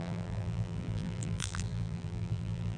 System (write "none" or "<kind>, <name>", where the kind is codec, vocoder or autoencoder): vocoder, BigVGAN v2